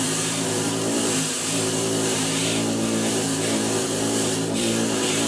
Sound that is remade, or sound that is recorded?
remade